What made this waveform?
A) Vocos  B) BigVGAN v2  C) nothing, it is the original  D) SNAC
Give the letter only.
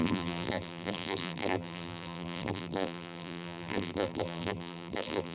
B